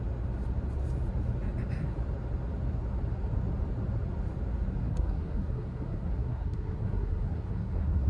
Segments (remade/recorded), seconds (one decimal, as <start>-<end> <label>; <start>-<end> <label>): 0.0-4.8 recorded; 4.8-8.1 remade